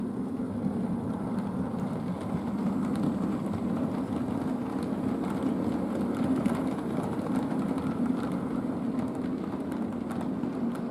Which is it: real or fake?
real